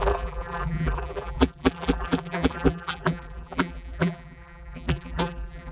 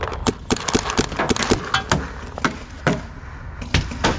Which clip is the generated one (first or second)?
first